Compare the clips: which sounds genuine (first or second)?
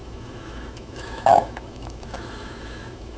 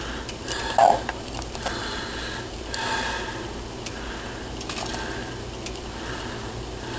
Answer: second